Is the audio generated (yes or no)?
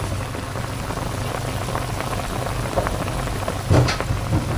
no